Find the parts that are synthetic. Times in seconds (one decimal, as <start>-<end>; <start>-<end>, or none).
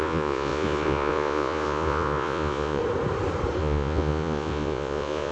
0.0-2.8; 3.6-5.3